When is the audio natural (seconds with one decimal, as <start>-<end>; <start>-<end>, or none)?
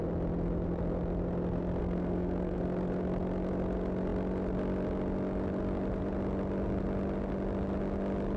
0.0-1.8; 2.6-8.4